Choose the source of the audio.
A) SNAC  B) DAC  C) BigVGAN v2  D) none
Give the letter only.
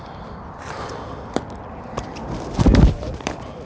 C